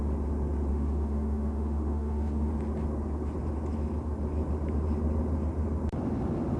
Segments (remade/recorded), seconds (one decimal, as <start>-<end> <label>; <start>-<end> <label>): 0.0-0.7 recorded; 0.7-2.5 remade; 2.5-6.6 recorded